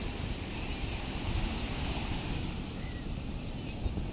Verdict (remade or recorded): recorded